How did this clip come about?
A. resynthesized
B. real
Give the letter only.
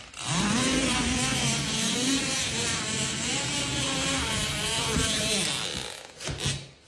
B